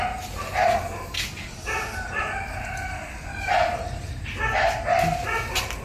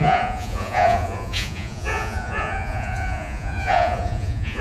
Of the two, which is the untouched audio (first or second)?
first